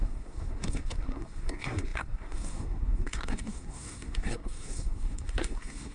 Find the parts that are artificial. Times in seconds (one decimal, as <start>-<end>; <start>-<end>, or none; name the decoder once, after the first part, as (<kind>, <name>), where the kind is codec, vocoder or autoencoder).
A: 0.0-5.9 (codec, SNAC)